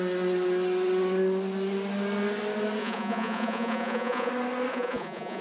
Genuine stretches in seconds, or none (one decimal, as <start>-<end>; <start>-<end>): 0.0-2.8; 4.3-4.7